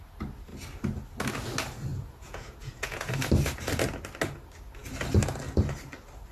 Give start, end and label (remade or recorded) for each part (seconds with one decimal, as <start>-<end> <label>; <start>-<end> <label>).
0.0-1.9 recorded; 1.9-3.1 remade; 3.1-6.3 recorded